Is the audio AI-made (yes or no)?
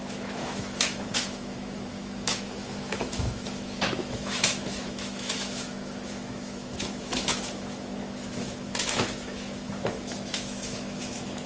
yes